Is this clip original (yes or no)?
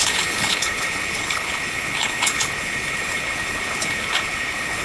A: no